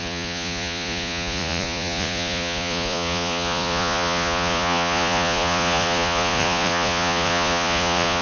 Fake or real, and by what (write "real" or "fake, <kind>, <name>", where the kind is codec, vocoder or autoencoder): fake, vocoder, Vocos